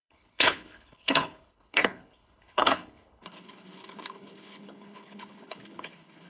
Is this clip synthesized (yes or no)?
yes